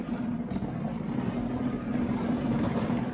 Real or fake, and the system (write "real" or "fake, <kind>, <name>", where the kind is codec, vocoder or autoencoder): real